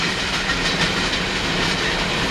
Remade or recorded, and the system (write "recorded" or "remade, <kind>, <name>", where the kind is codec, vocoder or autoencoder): recorded